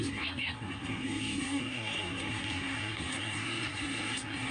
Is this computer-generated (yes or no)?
yes